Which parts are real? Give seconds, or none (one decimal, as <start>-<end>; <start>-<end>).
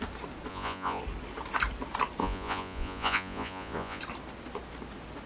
0.0-0.5; 1.0-2.2; 4.0-5.3